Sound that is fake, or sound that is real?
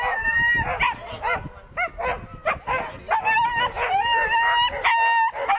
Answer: real